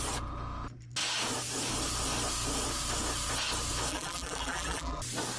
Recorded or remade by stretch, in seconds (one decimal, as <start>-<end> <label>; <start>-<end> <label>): 0.0-3.9 recorded; 3.9-5.0 remade; 5.0-5.4 recorded